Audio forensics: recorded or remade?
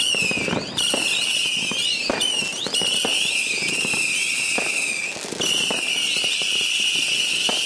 recorded